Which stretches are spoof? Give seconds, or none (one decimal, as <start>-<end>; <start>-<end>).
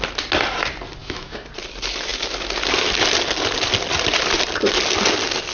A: 1.0-1.5